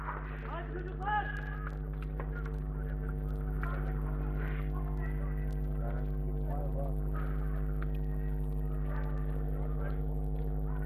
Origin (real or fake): real